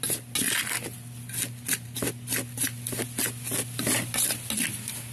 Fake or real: real